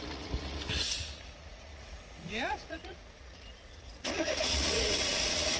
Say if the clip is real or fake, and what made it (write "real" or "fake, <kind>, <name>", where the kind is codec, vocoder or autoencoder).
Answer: fake, vocoder, Vocos